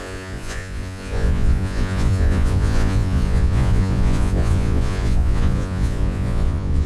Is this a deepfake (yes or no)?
yes